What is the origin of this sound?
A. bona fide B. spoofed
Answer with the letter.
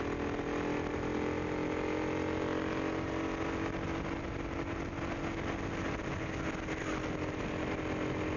A